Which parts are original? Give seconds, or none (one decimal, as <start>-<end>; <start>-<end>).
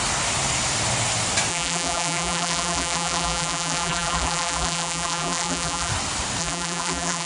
0.0-1.5; 5.9-6.4